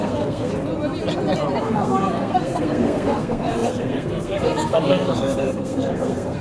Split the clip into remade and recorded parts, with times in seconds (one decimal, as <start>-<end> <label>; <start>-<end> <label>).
0.0-0.5 remade; 0.5-1.6 recorded; 1.6-6.4 remade